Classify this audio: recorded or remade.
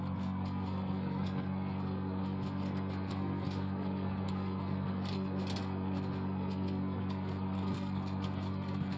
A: remade